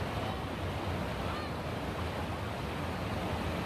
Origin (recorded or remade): recorded